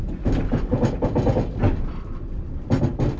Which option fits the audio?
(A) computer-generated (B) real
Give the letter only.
B